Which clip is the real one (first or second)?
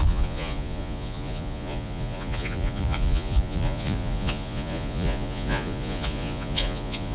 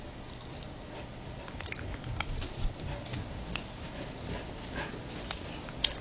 second